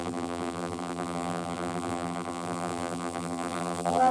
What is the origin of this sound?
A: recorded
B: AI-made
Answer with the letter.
B